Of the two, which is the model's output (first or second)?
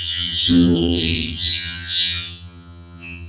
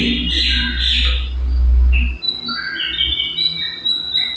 first